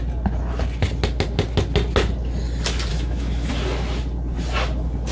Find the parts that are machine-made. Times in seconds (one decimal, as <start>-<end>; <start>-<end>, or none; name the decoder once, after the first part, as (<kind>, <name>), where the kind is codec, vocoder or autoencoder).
2.9-3.5 (autoencoder, DAC-VAE)